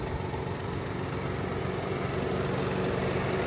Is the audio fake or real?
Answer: real